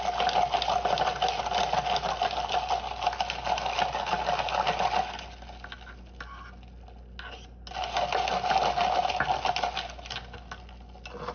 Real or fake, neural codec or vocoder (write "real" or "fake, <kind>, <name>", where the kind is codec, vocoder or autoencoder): real